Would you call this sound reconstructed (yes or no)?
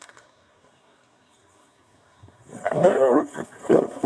yes